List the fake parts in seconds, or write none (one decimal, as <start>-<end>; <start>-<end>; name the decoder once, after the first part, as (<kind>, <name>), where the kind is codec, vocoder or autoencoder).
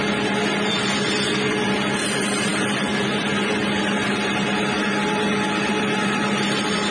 none